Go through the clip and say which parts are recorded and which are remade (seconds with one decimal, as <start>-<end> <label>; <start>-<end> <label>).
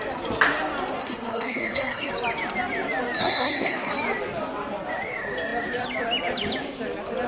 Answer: 0.0-1.0 recorded; 1.0-2.1 remade; 2.1-3.2 recorded; 3.2-3.9 remade; 3.9-7.3 recorded